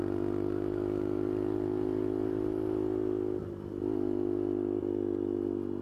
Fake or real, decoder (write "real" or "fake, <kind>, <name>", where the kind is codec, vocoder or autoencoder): real